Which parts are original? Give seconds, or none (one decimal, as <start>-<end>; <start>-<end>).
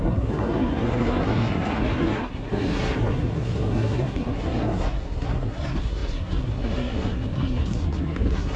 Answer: none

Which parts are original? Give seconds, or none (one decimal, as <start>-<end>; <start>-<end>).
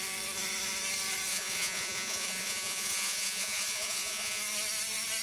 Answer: 0.0-1.3; 4.4-5.2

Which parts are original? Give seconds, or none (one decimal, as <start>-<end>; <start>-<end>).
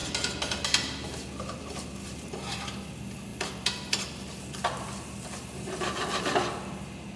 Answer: 0.0-7.2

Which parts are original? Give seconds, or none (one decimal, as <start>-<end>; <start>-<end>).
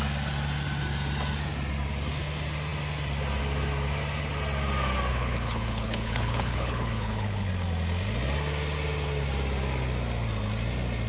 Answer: 0.0-5.1; 7.5-11.1